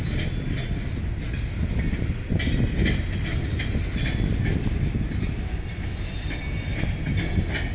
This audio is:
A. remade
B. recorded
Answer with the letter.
B